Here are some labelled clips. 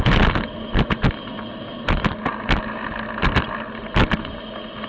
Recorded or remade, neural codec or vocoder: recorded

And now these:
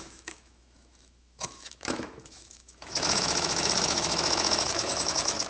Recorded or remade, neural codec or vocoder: remade, autoencoder, DAC-VAE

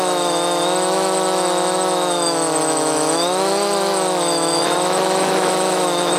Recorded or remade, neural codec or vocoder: remade, autoencoder, DAC-VAE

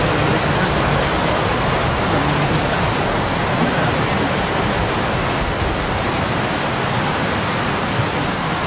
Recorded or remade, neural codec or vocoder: recorded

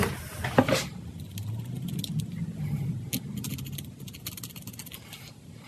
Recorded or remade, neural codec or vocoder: recorded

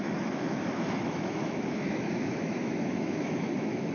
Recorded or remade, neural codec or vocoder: remade, autoencoder, DAC-VAE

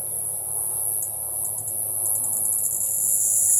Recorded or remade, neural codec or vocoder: recorded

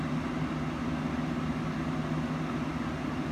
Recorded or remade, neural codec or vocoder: recorded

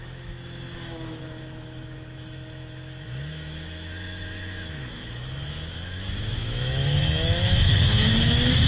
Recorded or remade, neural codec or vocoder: remade, autoencoder, DAC-VAE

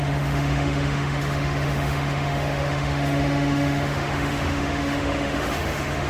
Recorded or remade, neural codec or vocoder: remade, autoencoder, DAC-VAE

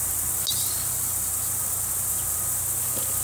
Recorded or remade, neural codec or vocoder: recorded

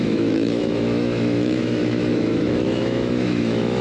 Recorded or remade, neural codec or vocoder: remade, autoencoder, DAC-VAE